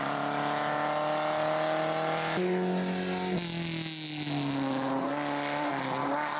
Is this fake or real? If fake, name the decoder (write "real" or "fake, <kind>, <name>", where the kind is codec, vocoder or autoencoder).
real